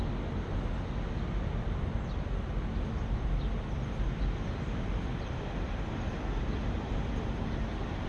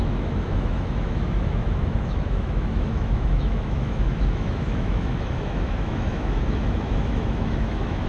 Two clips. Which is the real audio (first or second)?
first